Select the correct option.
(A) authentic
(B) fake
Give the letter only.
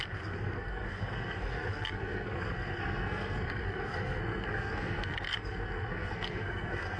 B